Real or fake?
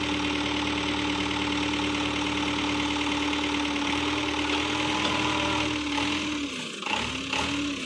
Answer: real